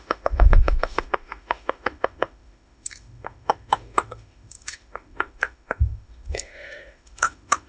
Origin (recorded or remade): remade